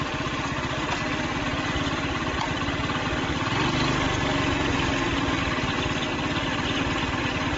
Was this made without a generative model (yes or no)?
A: yes